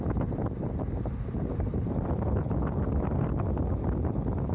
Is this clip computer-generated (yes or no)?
no